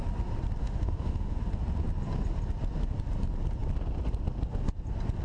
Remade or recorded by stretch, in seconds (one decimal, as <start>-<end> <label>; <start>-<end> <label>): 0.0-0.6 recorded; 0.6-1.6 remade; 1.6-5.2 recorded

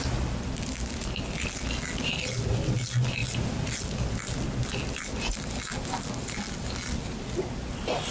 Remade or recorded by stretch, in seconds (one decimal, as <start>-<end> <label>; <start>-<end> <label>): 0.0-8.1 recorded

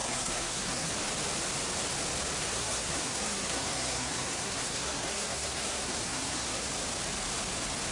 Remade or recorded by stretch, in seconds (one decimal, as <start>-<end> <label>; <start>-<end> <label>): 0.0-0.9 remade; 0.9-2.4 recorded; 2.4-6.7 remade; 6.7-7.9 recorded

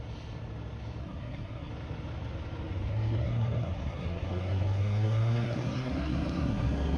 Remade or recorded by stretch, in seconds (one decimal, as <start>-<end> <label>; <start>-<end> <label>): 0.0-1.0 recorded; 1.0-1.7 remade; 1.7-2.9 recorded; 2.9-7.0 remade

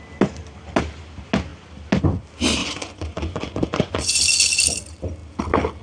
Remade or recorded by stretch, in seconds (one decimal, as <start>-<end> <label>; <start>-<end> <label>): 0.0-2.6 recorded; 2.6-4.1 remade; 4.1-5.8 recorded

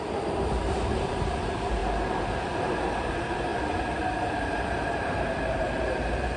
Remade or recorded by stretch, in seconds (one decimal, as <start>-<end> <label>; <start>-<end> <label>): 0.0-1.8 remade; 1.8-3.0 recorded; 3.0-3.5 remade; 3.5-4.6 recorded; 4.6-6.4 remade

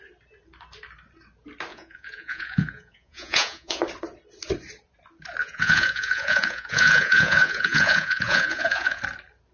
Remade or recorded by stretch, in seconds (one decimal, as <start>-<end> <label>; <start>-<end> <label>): 0.0-1.7 recorded; 1.7-3.8 remade; 3.8-5.4 recorded; 5.4-9.0 remade; 9.0-9.5 recorded